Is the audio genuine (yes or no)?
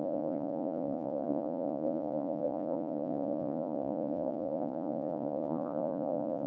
no